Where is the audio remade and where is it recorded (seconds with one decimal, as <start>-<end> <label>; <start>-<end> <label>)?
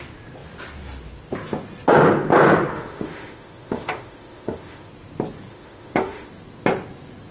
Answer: 0.0-2.7 recorded; 2.7-4.9 remade; 4.9-5.5 recorded; 5.5-6.3 remade; 6.3-7.3 recorded